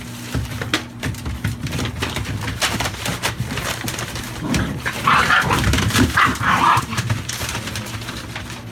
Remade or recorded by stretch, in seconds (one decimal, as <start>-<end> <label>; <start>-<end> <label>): 0.0-3.1 recorded; 3.1-7.5 remade; 7.5-8.7 recorded